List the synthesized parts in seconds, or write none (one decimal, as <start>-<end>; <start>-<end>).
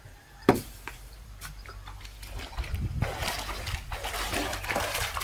0.0-1.7; 4.8-5.2